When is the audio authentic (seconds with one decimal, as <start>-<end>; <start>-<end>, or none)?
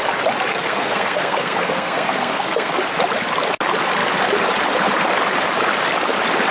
0.0-0.5; 2.7-6.5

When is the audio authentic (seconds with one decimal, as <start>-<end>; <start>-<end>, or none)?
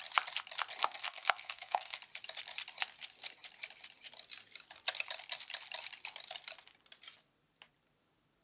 0.0-0.8; 2.0-8.4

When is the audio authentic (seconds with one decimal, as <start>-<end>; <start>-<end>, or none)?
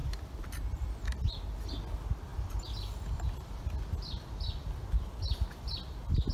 0.0-6.3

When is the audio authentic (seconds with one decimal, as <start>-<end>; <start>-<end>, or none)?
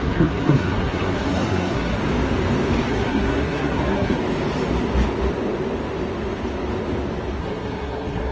2.0-2.9; 4.2-7.4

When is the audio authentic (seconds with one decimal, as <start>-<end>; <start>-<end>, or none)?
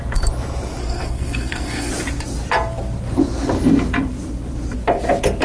0.0-0.8; 1.9-5.4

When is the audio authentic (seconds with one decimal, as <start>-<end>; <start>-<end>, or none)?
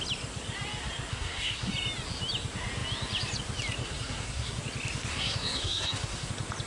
0.0-1.1; 1.7-3.8; 4.6-5.1; 6.3-6.7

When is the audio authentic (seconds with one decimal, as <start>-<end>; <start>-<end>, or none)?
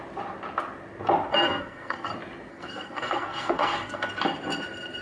0.0-1.3; 2.1-2.5; 4.1-5.0